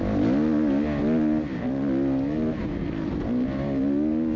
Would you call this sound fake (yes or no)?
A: no